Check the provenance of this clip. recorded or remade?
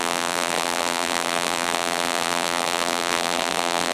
remade